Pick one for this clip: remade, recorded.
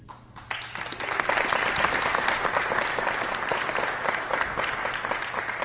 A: recorded